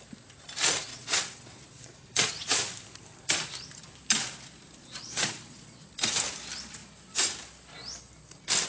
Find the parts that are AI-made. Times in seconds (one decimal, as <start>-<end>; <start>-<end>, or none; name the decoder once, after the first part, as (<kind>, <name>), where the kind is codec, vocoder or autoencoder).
0.9-2.7 (vocoder, Vocos); 4.8-5.9